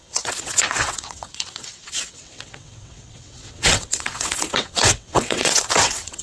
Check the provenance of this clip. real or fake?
fake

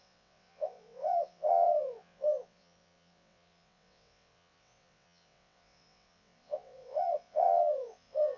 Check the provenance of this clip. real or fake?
fake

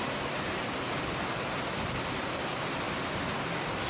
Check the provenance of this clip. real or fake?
real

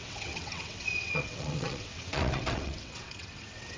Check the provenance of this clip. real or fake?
fake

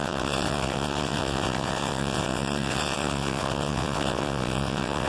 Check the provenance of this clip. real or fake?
fake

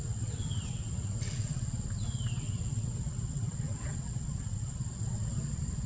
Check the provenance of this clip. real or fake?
fake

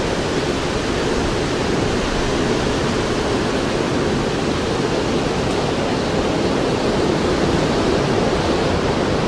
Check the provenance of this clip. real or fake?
real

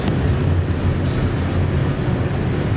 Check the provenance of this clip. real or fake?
real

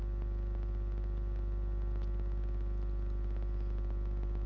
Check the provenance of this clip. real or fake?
real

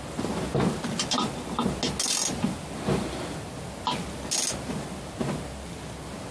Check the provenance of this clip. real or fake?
real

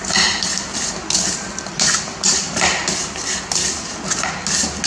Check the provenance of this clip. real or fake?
real